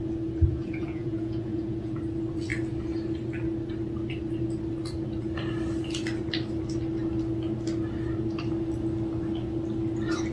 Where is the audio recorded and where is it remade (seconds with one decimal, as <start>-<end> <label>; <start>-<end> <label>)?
0.0-0.5 recorded; 0.5-2.0 remade; 2.0-10.3 recorded